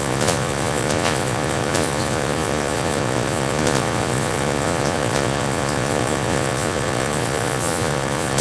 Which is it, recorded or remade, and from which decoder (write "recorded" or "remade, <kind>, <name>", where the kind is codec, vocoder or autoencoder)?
remade, vocoder, Vocos